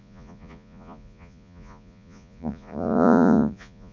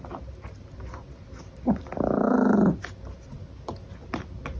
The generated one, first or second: first